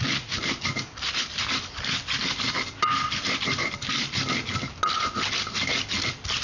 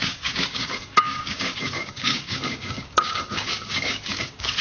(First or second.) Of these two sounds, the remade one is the second